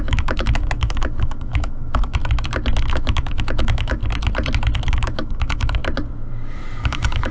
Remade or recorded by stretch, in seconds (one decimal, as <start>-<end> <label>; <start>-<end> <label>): 0.0-2.2 remade; 2.2-2.9 recorded; 2.9-4.0 remade; 4.0-4.9 recorded; 4.9-5.8 remade; 5.8-6.8 recorded; 6.8-7.3 remade